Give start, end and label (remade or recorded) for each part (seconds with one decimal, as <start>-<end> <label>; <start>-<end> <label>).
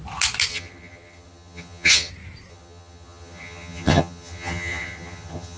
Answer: 0.0-0.5 recorded; 0.5-2.1 remade; 2.1-2.5 recorded; 2.5-5.6 remade